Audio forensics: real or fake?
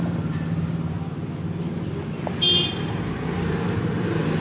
real